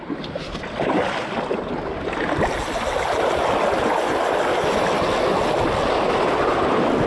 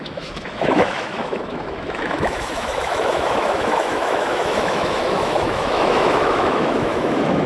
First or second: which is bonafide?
first